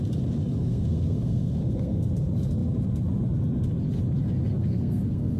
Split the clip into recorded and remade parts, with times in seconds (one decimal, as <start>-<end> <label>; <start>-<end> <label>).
0.0-0.6 recorded; 0.6-2.1 remade; 2.1-4.6 recorded; 4.6-5.4 remade